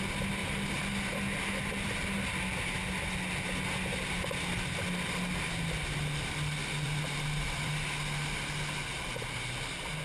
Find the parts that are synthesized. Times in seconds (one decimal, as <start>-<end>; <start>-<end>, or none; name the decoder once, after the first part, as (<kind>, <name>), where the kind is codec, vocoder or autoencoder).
6.6-7.7 (vocoder, BigVGAN v2)